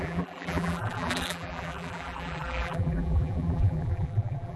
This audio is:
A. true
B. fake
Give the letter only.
B